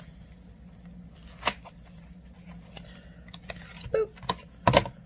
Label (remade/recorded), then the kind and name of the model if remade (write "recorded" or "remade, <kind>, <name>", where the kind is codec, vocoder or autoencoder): recorded